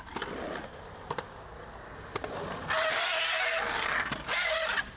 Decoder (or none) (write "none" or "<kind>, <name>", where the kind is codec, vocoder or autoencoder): none